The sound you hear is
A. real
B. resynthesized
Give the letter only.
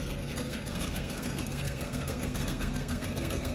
B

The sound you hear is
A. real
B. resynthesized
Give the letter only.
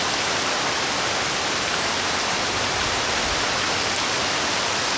A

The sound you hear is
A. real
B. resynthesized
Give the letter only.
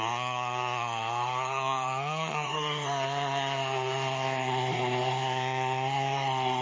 B